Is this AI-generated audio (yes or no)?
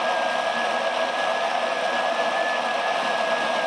no